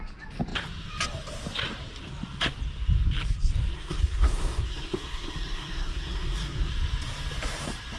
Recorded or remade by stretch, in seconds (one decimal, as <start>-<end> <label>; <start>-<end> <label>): 0.0-3.7 recorded; 3.7-6.7 remade; 6.7-8.0 recorded